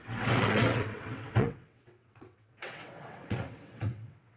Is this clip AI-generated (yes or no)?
yes